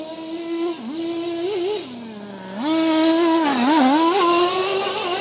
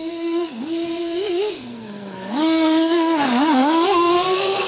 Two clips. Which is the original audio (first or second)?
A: first